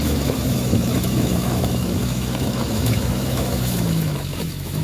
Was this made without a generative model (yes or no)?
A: no